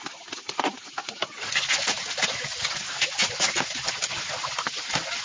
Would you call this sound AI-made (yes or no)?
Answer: no